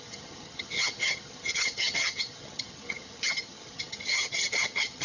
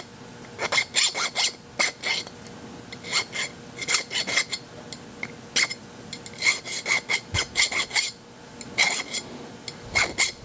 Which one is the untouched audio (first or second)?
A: second